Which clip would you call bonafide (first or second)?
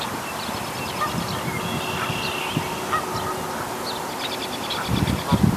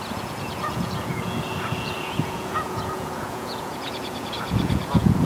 first